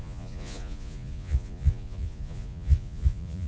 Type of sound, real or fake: fake